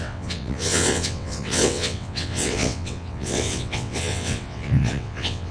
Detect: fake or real fake